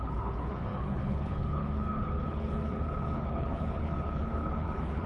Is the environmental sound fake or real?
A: fake